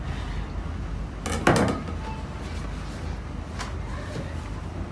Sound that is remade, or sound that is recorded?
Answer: recorded